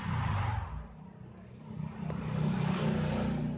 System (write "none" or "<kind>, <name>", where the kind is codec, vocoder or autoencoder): none